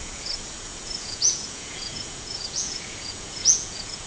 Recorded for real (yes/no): no